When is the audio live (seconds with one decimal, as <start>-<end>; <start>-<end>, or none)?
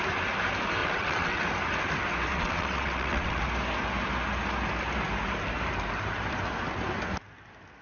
0.0-0.8; 1.4-2.3; 3.4-7.8